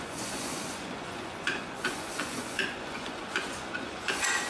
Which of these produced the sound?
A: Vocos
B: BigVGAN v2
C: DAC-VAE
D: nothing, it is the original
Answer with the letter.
A